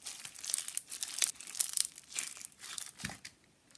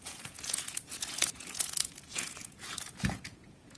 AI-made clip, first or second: second